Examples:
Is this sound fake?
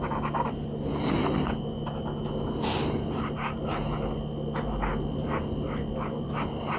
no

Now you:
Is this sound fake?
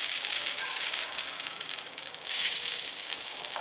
yes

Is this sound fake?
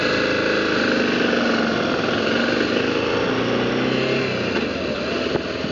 no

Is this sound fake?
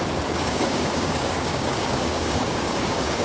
yes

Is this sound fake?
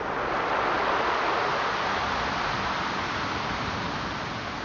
no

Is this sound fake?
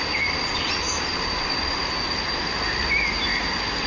no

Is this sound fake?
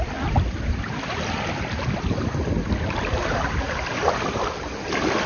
no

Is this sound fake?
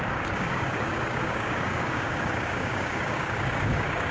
yes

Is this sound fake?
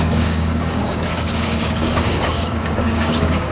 yes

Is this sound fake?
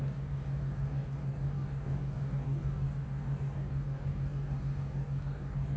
yes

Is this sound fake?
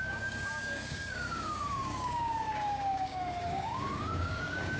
yes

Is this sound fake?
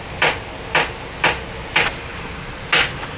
no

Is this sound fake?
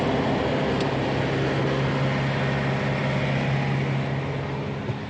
no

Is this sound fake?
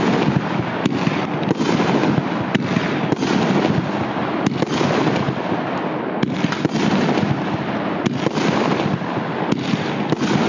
no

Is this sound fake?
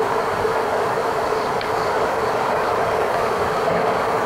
yes